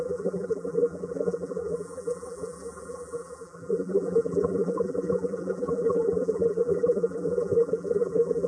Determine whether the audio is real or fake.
fake